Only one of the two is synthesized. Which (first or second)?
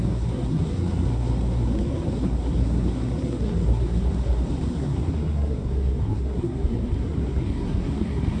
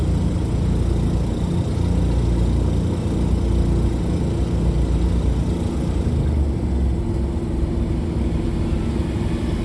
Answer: first